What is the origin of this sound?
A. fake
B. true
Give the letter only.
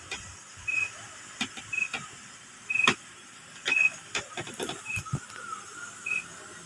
B